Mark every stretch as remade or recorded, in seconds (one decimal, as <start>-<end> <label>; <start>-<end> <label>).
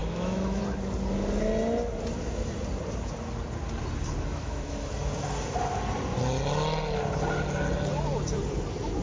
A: 0.0-0.6 remade; 0.6-4.3 recorded; 4.3-4.9 remade; 4.9-9.0 recorded